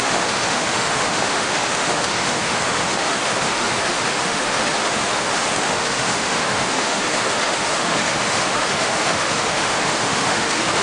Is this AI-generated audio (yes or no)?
yes